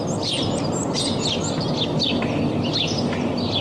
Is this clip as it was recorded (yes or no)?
yes